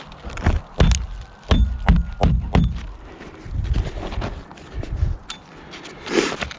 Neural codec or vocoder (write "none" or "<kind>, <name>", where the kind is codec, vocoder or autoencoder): none